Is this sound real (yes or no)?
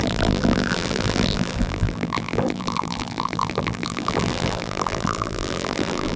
no